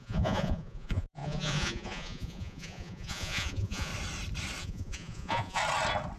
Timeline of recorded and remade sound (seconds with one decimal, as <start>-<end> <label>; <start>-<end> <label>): 0.0-3.9 remade; 3.9-4.6 recorded; 4.6-5.6 remade; 5.6-6.2 recorded